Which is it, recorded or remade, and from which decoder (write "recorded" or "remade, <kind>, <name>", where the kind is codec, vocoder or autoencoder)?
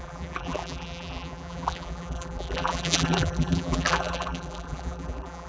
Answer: remade, vocoder, BigVGAN v2